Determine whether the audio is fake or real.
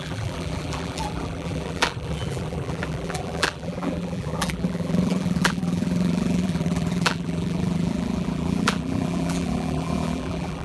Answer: fake